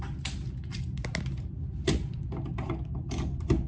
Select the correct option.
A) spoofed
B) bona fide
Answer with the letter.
B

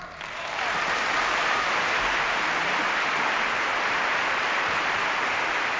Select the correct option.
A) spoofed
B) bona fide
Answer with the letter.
B